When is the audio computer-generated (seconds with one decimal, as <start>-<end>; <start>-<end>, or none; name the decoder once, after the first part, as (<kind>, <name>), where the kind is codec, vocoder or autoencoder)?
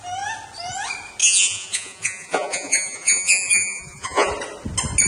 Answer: 1.2-4.3 (vocoder, Vocos)